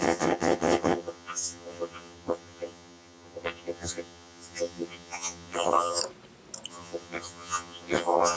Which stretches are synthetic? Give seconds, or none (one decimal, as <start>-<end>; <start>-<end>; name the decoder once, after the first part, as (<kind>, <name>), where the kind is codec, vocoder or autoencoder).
0.0-6.0 (vocoder, HiFi-GAN); 6.7-8.4